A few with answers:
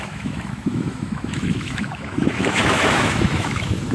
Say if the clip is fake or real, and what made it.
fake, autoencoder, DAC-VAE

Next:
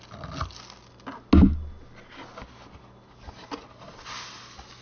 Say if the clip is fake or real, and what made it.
real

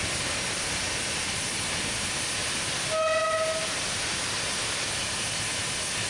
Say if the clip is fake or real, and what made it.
real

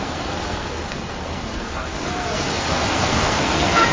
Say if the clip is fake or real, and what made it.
fake, codec, SNAC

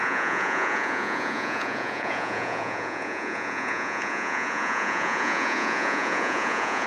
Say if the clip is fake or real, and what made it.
fake, vocoder, Vocos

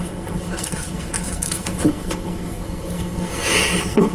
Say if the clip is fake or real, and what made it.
fake, codec, SNAC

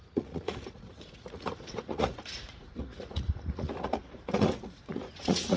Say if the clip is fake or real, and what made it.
fake, vocoder, Vocos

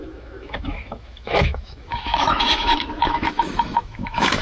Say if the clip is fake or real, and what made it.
fake, autoencoder, DAC-VAE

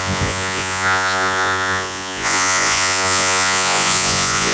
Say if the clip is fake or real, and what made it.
fake, vocoder, Vocos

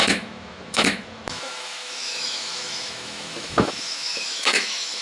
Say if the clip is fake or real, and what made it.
fake, autoencoder, DAC-VAE